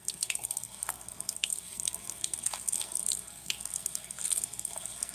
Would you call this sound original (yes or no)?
no